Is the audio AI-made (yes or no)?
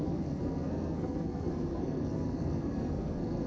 yes